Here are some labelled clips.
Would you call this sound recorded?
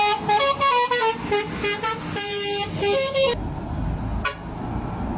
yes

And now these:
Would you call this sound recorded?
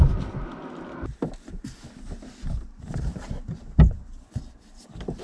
yes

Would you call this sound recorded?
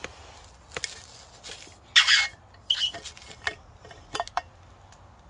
yes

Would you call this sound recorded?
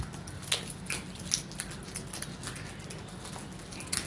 yes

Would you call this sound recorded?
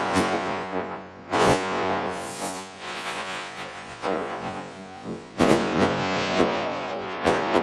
no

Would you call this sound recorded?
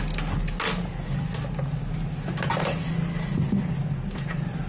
yes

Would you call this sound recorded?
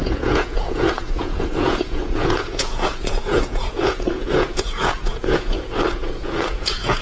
no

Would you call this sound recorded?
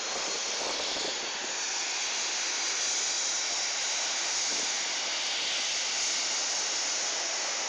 yes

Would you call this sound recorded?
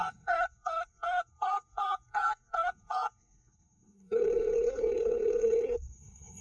no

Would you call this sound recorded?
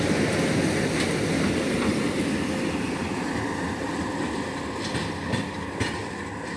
yes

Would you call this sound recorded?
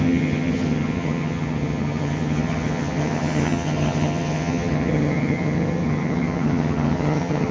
no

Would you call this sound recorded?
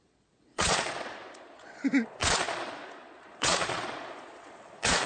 no